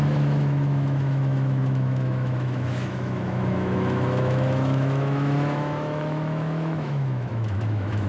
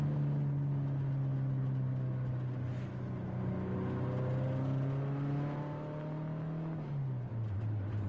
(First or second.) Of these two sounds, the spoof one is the first